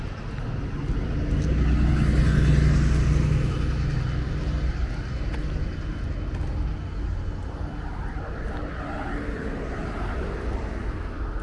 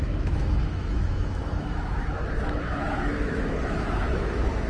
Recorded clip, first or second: first